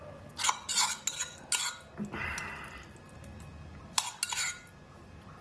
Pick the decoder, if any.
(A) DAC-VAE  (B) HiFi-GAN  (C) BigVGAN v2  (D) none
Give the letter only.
D